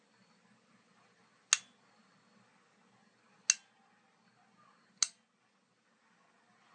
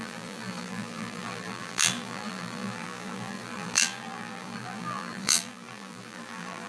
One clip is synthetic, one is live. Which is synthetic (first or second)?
second